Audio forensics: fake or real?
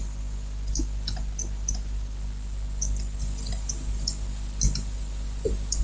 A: real